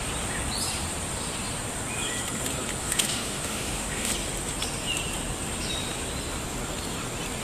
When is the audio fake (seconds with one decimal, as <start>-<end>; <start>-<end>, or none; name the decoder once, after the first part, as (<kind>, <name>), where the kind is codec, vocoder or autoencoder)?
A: 2.8-4.1 (autoencoder, DAC-VAE)